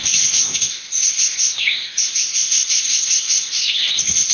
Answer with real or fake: fake